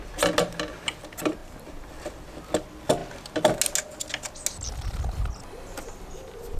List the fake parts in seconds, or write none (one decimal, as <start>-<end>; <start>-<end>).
1.4-2.3